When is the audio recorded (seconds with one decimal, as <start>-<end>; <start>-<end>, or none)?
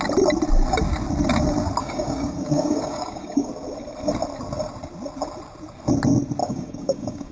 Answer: 0.0-1.8; 3.5-6.4